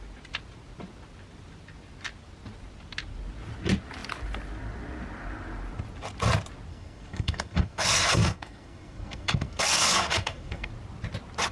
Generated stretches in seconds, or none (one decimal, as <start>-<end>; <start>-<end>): 6.7-10.7